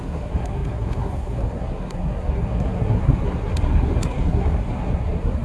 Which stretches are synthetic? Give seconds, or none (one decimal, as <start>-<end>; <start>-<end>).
0.0-5.4